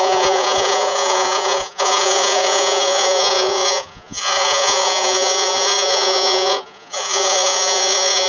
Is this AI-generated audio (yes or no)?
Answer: yes